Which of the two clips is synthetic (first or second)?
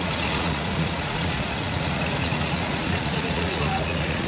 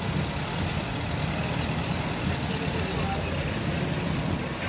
first